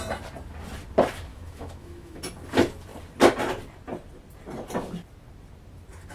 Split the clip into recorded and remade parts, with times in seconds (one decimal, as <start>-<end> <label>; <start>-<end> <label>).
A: 0.0-1.3 recorded; 1.3-2.2 remade; 2.2-6.1 recorded